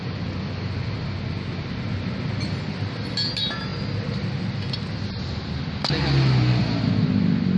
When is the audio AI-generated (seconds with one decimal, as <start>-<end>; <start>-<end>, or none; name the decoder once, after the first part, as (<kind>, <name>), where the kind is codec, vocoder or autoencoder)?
none